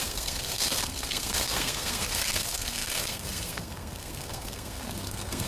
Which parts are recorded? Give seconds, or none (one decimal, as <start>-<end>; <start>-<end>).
none